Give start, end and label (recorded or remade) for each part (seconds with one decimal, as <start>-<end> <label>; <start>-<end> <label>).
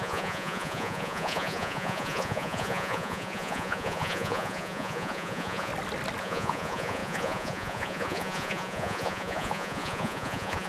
0.0-5.7 remade; 5.7-6.2 recorded; 6.2-10.7 remade